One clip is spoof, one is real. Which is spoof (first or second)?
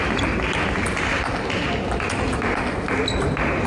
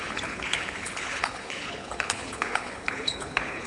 second